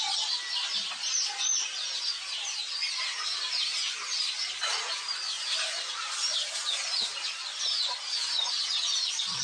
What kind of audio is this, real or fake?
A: fake